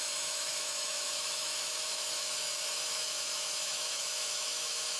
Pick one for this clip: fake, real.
fake